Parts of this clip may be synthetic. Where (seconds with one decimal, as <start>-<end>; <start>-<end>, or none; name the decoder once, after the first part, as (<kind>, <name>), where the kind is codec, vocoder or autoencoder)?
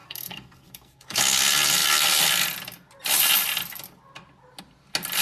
0.0-1.2 (codec, SNAC)